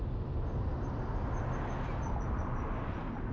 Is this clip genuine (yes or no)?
yes